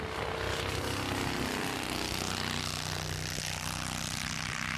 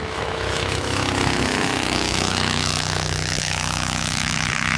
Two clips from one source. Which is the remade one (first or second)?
second